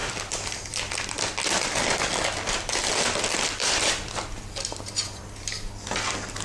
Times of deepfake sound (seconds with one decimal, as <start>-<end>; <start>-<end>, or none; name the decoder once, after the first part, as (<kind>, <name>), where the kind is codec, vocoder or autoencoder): 0.0-2.9 (vocoder, BigVGAN v2); 3.6-5.2